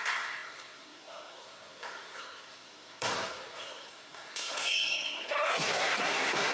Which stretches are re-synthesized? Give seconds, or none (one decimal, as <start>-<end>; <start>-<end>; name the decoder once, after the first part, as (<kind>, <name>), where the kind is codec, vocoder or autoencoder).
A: 0.0-6.5 (codec, SNAC)